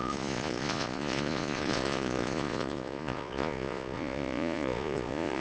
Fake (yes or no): yes